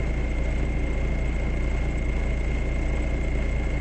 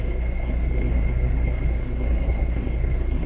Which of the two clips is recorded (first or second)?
first